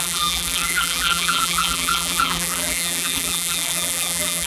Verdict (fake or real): fake